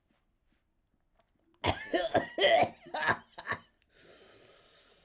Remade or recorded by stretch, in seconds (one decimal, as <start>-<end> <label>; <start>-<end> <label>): 0.0-5.0 recorded